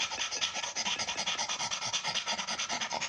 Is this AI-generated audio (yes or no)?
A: no